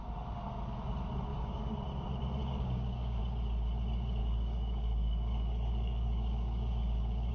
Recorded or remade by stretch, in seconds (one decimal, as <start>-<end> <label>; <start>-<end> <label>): 0.0-1.3 recorded; 1.3-1.8 remade; 1.8-2.4 recorded; 2.4-3.2 remade; 3.2-4.2 recorded; 4.2-7.3 remade